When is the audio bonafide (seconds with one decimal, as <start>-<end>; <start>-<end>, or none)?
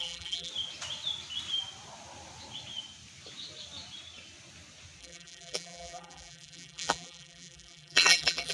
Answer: 0.5-5.0